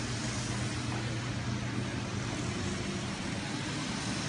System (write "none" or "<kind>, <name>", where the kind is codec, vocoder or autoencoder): none